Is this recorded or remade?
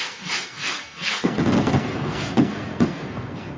remade